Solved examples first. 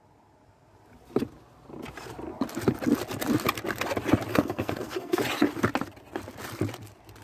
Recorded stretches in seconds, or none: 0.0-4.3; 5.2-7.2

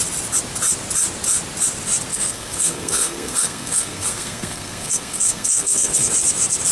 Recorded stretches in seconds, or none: 0.0-2.1; 6.1-6.7

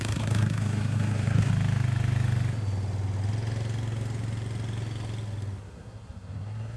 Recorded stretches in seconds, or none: 1.5-5.6

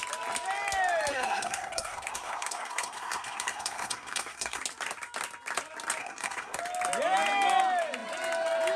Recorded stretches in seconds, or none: 0.0-1.1; 4.6-6.0; 6.6-8.8